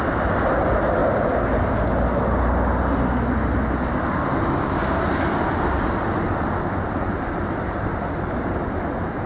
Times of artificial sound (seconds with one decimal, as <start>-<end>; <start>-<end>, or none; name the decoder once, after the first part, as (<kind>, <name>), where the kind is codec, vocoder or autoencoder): none